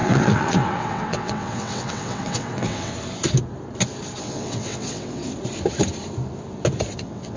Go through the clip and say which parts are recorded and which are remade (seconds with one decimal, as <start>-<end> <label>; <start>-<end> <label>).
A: 0.0-2.9 remade; 2.9-4.2 recorded; 4.2-5.2 remade; 5.2-6.9 recorded; 6.9-7.4 remade